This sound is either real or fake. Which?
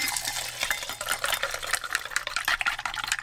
fake